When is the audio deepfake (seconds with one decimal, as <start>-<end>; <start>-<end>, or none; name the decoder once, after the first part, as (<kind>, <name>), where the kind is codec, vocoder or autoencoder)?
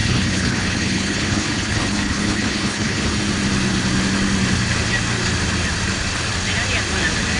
0.0-3.1 (codec, HILCodec)